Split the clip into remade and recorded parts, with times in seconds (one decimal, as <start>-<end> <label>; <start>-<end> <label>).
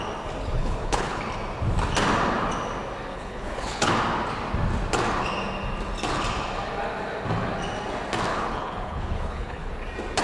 0.0-0.6 recorded; 0.6-1.2 remade; 1.2-3.1 recorded; 3.1-3.9 remade; 3.9-8.3 recorded; 8.3-9.7 remade; 9.7-10.2 recorded